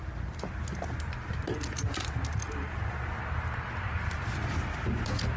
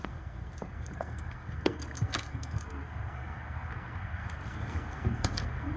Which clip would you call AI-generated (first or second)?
second